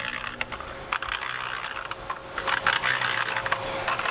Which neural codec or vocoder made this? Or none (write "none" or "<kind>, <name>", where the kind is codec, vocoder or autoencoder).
none